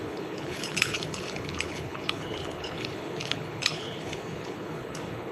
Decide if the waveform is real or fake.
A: fake